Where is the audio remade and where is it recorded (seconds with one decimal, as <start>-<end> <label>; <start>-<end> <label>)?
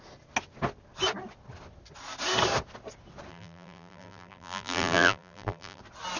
0.0-3.3 recorded; 3.3-5.8 remade; 5.8-6.2 recorded